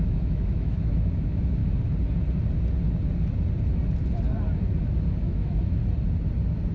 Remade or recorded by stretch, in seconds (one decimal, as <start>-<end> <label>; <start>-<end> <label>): 0.0-1.6 remade; 1.6-5.2 recorded; 5.2-5.8 remade; 5.8-6.7 recorded